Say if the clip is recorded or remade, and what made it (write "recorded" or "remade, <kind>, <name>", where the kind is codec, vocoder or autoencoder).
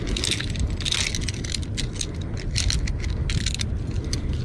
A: recorded